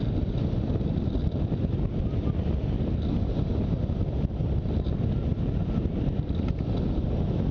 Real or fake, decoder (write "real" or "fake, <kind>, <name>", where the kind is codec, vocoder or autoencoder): real